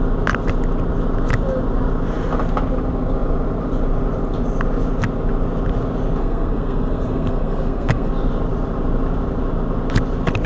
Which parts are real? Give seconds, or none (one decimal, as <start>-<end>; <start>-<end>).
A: 0.0-6.2; 8.1-10.5

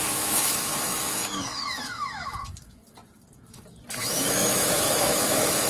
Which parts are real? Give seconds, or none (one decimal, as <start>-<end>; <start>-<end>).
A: 2.8-4.0